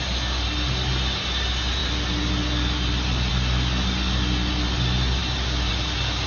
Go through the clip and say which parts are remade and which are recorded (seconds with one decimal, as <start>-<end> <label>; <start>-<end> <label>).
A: 0.0-6.3 recorded